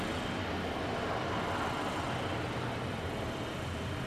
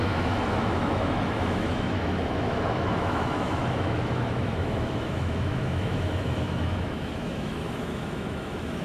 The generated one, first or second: second